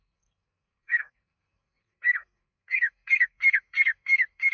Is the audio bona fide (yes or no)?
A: no